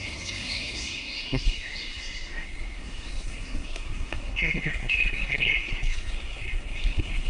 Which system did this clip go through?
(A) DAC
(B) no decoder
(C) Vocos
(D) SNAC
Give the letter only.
D